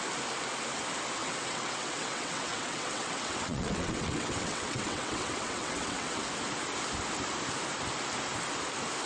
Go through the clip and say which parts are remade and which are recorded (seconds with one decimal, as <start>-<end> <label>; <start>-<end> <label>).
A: 0.0-1.2 recorded; 1.2-6.2 remade; 6.2-9.1 recorded